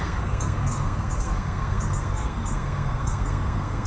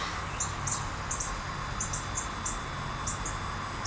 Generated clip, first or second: first